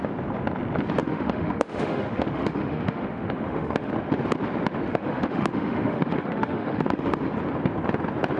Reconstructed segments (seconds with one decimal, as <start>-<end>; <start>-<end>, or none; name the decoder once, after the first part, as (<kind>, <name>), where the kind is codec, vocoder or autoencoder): 1.0-3.9 (autoencoder, DAC-VAE); 4.9-7.2